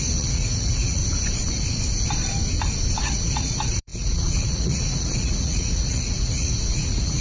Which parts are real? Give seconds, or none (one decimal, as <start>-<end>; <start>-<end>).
1.0-3.0